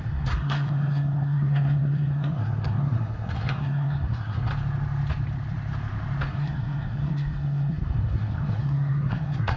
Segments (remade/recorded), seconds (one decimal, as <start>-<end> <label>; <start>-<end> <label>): 0.0-4.5 remade; 4.5-6.3 recorded; 6.3-9.6 remade